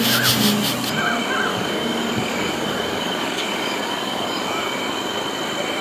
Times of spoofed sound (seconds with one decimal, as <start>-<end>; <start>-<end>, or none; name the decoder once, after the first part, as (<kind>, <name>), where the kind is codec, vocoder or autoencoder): 1.5-4.8 (codec, DAC)